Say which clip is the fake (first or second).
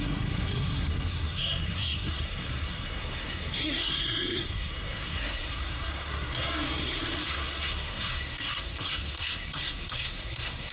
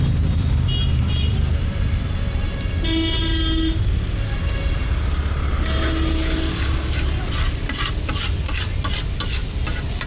first